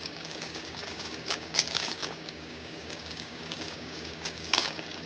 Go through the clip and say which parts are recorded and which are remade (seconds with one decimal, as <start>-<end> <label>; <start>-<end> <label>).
0.0-5.1 remade